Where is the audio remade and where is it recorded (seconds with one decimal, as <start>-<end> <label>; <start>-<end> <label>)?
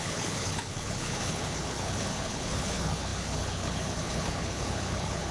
0.0-5.3 remade